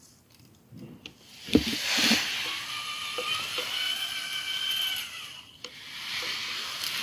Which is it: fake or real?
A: real